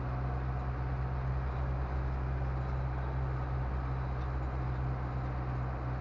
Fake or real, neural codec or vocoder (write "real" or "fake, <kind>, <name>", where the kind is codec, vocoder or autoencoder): real